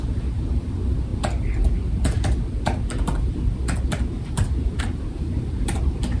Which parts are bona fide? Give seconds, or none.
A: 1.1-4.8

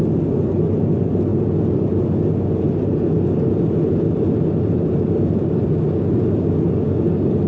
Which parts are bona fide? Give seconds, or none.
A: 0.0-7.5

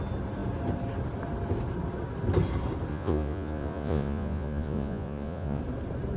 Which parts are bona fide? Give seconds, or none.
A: 0.0-2.9; 5.6-6.2